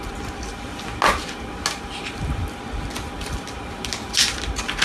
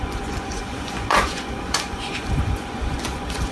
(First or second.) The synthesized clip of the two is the second